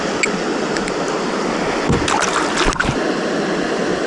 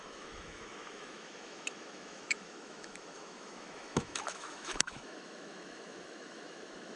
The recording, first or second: first